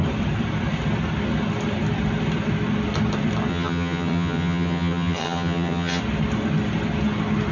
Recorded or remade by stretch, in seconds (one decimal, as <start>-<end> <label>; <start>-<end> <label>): 0.0-3.5 recorded; 3.5-6.0 remade; 6.0-7.5 recorded